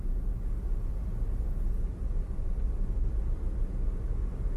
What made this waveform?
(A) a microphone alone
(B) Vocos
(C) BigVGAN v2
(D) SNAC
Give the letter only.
A